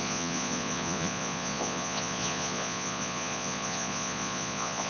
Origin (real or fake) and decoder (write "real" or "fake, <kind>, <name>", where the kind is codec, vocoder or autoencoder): fake, vocoder, Vocos